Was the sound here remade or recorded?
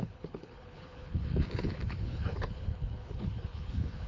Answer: remade